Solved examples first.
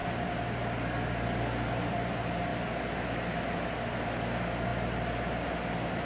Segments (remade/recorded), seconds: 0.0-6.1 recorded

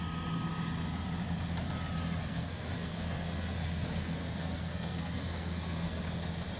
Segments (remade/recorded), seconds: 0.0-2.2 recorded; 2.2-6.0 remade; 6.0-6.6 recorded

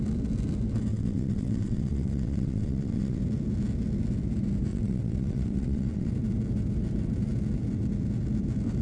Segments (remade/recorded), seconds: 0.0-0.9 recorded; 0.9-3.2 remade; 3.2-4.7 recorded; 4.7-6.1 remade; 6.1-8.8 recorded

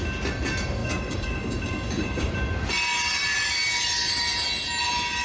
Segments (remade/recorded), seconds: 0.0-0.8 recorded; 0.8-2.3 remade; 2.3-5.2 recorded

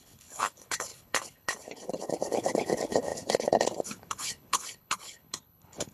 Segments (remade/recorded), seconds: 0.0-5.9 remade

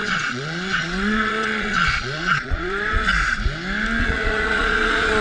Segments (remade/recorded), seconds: 0.0-3.1 remade; 3.1-4.0 recorded; 4.0-5.2 remade

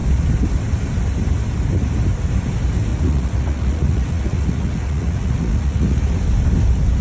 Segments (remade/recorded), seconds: 0.0-2.9 recorded; 2.9-6.0 remade; 6.0-7.0 recorded